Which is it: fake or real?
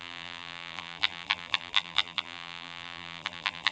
fake